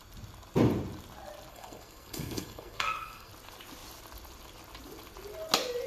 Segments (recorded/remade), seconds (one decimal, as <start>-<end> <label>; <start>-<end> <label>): 0.0-1.5 recorded; 1.5-3.3 remade; 3.3-5.9 recorded